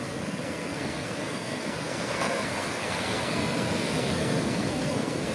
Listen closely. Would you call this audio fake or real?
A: fake